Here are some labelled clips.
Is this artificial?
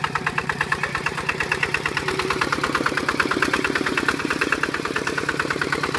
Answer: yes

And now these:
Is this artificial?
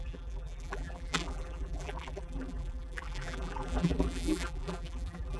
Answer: yes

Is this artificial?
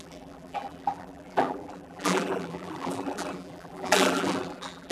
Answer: yes